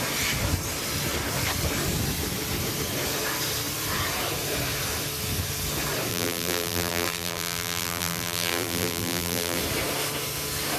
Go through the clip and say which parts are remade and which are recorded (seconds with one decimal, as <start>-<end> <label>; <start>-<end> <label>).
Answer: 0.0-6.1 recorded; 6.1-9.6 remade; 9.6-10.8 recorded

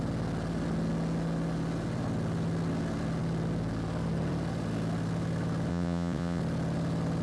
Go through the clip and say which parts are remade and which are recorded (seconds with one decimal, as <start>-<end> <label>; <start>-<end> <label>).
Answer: 0.0-5.7 recorded; 5.7-6.4 remade; 6.4-7.2 recorded

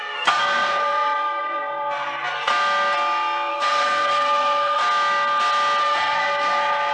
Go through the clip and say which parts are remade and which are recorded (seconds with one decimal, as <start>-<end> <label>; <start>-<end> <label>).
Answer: 0.0-2.5 remade; 2.5-3.5 recorded; 3.5-4.8 remade; 4.8-5.8 recorded; 5.8-6.9 remade